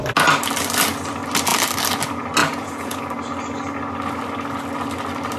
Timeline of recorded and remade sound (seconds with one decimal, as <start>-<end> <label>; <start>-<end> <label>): 0.0-2.4 recorded; 2.4-3.0 remade; 3.0-5.4 recorded

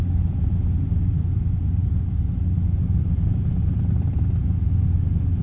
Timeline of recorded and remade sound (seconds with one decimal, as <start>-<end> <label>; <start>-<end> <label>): 0.0-5.4 recorded